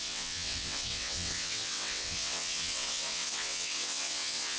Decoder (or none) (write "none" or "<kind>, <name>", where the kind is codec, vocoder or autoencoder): vocoder, WaveNeXt